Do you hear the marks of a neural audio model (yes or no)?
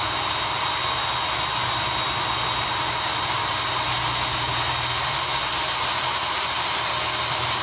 no